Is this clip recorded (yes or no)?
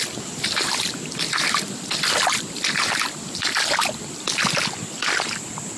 no